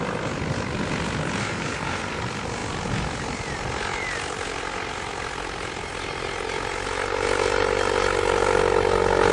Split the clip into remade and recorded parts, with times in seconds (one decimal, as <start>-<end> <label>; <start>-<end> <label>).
0.0-1.4 recorded; 1.4-2.2 remade; 2.2-9.3 recorded